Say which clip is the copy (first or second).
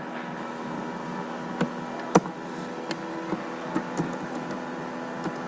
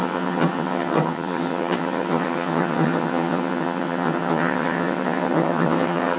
second